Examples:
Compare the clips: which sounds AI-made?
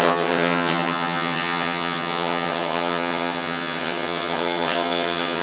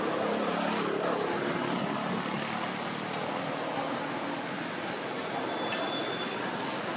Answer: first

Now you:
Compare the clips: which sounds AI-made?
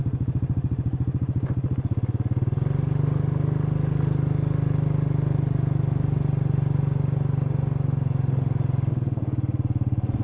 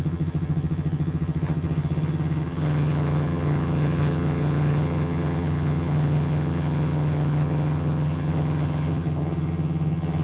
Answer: second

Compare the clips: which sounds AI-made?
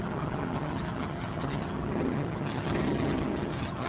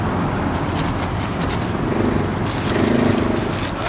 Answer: first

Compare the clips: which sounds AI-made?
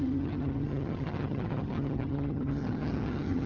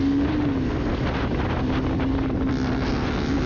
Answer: first